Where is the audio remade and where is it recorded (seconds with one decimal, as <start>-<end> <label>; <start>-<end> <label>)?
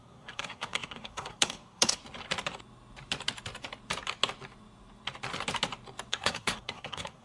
0.0-2.0 remade; 2.0-6.1 recorded; 6.1-7.2 remade